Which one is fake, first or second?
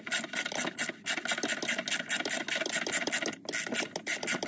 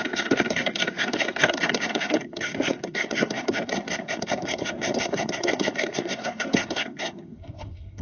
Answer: second